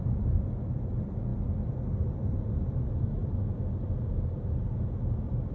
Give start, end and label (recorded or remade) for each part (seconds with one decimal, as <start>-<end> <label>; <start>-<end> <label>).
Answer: 0.0-5.5 recorded